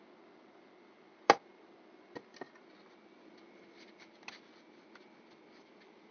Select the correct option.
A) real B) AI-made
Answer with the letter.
A